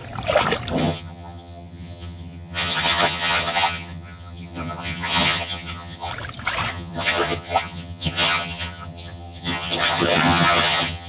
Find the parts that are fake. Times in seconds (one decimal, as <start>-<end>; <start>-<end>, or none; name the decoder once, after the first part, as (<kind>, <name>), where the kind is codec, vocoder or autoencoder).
0.8-6.1 (vocoder, HiFi-GAN); 6.7-11.1